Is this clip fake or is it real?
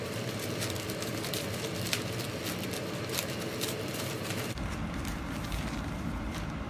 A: fake